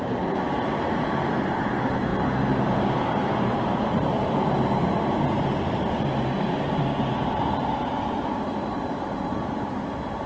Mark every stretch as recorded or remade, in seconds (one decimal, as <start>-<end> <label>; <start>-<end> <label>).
0.0-4.8 remade; 4.8-7.1 recorded; 7.1-10.3 remade